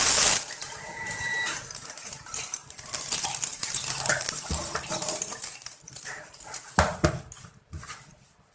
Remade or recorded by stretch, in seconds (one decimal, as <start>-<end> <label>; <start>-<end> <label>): 0.0-0.6 recorded; 0.6-2.9 remade; 2.9-3.5 recorded; 3.5-7.1 remade; 7.1-8.5 recorded

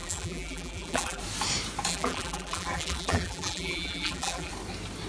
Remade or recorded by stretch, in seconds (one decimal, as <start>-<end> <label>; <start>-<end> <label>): 0.0-1.2 remade; 1.2-1.9 recorded; 1.9-4.5 remade; 4.5-5.1 recorded